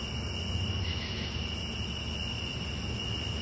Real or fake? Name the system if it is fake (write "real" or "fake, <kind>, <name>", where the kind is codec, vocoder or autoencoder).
real